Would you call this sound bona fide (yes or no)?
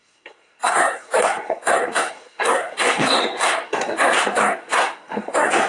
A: no